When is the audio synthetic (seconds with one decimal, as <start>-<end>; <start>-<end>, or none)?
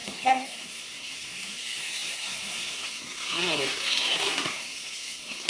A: 0.0-5.5